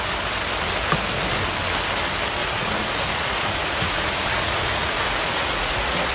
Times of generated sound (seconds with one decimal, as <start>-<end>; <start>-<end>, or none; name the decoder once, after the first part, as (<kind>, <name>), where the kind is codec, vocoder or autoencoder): 2.4-6.1 (vocoder, Vocos)